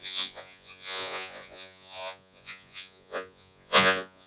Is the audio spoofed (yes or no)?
yes